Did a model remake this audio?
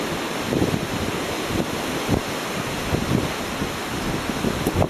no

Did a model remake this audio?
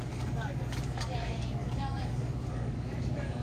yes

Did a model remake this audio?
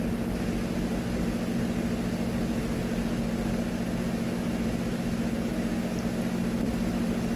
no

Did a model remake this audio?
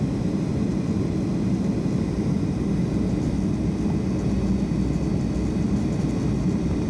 no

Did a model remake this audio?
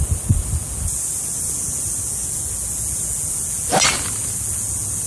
no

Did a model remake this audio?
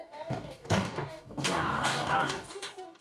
yes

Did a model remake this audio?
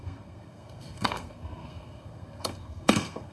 yes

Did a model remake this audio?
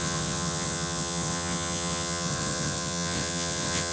yes